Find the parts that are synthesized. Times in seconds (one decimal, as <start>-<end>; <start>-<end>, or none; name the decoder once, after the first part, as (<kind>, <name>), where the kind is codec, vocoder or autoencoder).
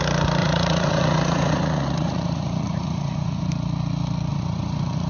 0.4-3.5 (vocoder, Vocos); 4.3-5.1